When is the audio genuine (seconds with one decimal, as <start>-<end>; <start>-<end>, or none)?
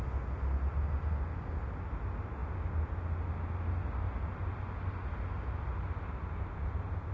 0.0-7.1